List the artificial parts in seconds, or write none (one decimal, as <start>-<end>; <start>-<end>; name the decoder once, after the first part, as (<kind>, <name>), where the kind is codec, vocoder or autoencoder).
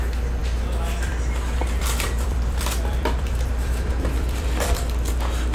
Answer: 1.6-4.8 (vocoder, BigVGAN v2)